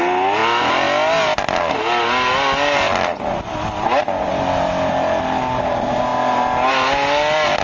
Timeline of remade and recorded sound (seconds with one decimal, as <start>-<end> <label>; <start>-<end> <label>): 0.0-7.6 recorded